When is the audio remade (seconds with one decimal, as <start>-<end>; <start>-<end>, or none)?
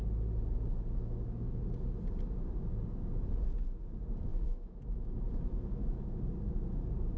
1.0-1.6; 4.3-6.2